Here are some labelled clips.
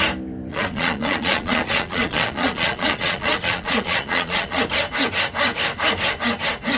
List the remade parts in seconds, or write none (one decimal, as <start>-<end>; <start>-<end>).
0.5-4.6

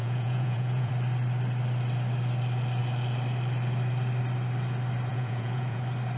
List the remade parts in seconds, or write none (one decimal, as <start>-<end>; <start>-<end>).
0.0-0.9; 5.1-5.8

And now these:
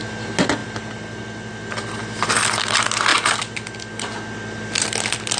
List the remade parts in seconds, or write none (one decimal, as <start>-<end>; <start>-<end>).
none